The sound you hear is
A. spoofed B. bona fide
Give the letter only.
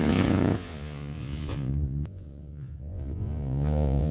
A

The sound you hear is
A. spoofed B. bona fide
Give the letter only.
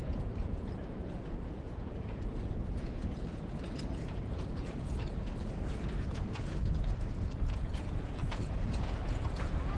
A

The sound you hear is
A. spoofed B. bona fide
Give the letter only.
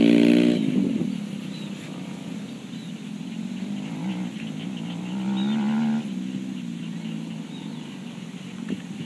B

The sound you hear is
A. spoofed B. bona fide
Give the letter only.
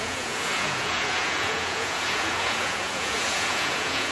A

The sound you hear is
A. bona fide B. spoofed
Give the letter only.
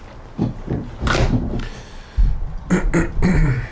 A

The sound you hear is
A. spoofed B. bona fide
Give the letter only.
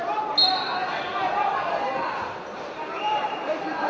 B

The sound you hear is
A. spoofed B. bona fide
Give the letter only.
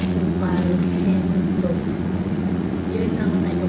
A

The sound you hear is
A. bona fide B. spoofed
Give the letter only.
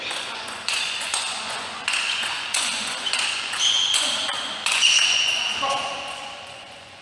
B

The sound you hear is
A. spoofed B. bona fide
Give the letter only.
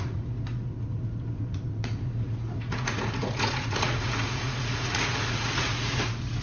A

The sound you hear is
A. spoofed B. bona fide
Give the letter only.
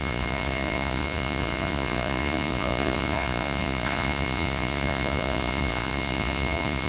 A